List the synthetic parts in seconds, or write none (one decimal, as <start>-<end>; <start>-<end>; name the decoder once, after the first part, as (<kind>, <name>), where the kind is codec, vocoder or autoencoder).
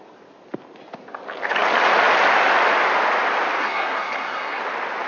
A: 3.6-4.6 (codec, SNAC)